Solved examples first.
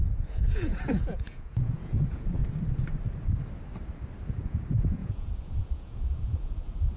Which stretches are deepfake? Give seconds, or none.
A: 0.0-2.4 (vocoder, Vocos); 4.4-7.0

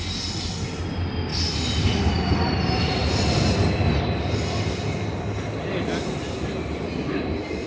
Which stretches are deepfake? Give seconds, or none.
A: none

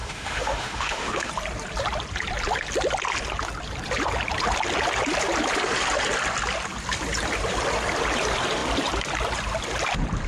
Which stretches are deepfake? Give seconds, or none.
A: 0.0-1.3 (autoencoder, DAC-VAE)